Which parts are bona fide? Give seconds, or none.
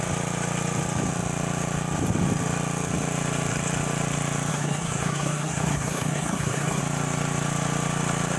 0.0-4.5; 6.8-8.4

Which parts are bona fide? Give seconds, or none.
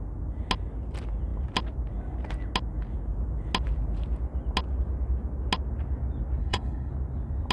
0.0-6.4; 6.9-7.5